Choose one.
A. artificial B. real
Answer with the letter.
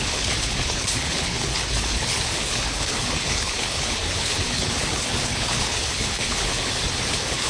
A